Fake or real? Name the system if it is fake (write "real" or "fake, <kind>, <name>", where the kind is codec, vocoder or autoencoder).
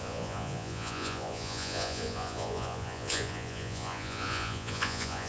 fake, vocoder, Vocos